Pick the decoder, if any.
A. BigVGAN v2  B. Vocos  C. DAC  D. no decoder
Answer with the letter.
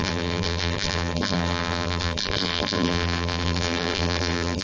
A